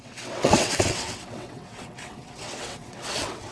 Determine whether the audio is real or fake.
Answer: fake